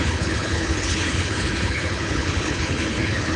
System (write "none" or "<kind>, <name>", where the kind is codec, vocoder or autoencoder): codec, HILCodec